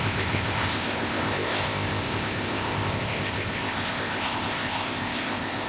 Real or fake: fake